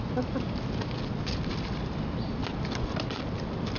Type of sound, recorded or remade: recorded